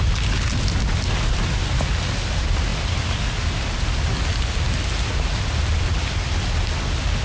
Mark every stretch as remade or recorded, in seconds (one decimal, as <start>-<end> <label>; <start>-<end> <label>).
0.0-7.2 recorded